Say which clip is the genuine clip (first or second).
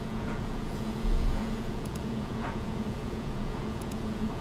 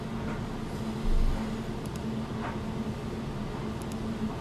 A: second